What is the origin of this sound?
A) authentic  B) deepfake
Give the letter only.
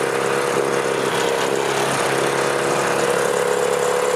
A